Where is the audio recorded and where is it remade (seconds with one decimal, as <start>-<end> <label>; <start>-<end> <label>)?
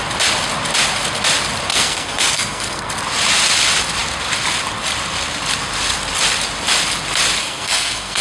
0.0-1.7 recorded; 1.7-2.9 remade; 2.9-7.4 recorded; 7.4-8.2 remade